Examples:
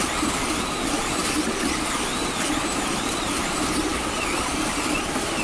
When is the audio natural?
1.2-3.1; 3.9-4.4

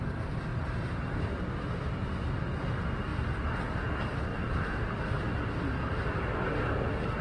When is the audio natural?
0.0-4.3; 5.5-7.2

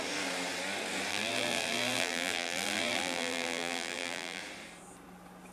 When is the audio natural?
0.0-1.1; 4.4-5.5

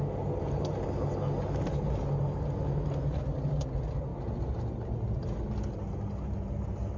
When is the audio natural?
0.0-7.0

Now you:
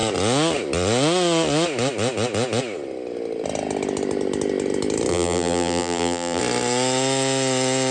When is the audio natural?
0.0-5.1; 6.4-7.9